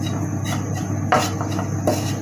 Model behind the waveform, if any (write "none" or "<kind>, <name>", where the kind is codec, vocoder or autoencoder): none